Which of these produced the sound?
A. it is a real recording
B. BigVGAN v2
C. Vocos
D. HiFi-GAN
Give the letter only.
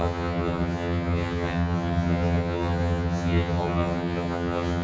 D